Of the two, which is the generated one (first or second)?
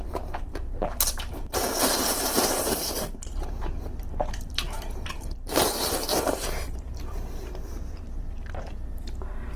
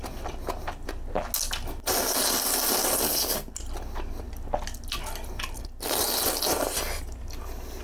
first